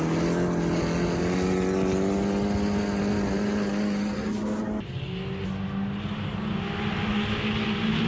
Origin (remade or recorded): recorded